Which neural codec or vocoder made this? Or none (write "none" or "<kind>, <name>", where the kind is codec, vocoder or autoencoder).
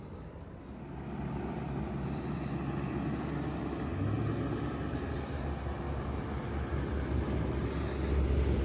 none